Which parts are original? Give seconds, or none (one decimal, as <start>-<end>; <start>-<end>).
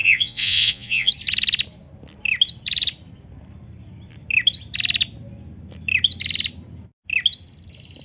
1.1-8.0